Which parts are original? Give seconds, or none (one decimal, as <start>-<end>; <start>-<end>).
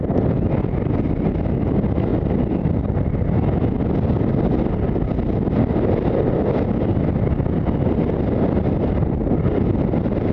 0.0-10.3